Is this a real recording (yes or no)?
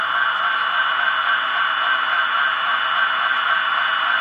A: yes